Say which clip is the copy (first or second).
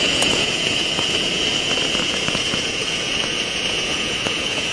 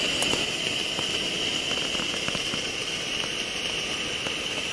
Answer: first